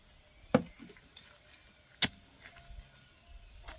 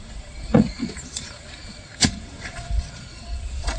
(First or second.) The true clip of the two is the first